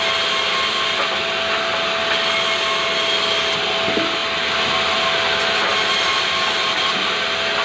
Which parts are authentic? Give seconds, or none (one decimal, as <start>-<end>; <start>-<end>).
0.0-7.6